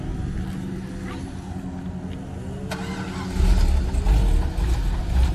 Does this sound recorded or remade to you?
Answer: recorded